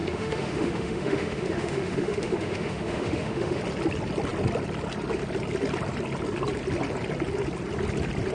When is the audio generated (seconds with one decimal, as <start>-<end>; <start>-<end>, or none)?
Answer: 0.0-3.6